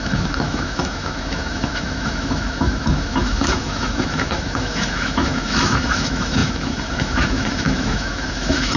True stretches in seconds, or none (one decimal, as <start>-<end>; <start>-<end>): none